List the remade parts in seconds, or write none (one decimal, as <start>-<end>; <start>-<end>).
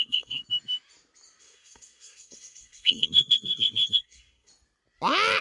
0.0-0.4; 1.4-4.5